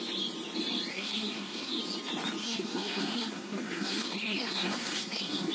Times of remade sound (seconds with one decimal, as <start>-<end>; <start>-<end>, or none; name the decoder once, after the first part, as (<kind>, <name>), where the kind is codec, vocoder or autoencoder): 0.9-1.8 (codec, SNAC); 2.4-5.5